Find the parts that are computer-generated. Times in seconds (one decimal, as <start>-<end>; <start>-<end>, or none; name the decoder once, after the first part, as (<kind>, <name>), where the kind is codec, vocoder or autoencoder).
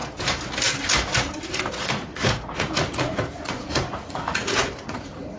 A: 1.7-5.4 (vocoder, Vocos)